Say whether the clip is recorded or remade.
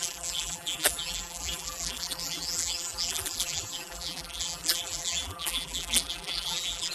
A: remade